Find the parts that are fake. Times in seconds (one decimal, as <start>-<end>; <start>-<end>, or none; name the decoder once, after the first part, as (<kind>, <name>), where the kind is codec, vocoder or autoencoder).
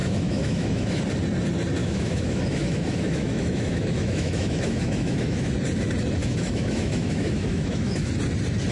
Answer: 0.0-1.0 (autoencoder, DAC-VAE); 1.8-5.5; 6.2-8.1